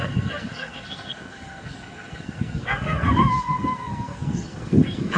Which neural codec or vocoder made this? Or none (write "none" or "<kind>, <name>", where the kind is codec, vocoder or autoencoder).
codec, SNAC